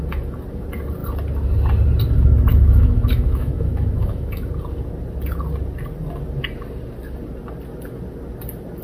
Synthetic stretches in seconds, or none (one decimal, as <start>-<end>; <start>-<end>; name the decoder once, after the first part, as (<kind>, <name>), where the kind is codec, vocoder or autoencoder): 2.5-4.5 (autoencoder, DAC-VAE)